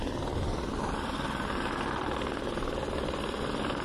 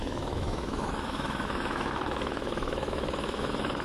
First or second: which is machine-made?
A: second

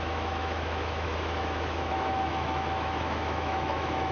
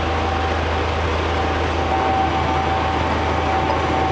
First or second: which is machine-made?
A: first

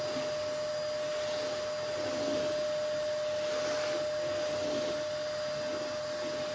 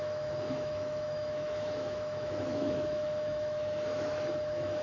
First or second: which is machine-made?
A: second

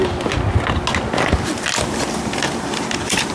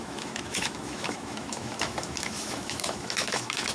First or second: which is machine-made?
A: second